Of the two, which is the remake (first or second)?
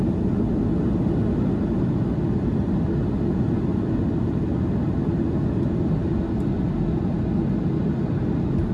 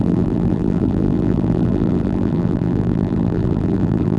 second